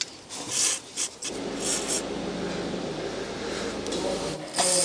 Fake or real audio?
real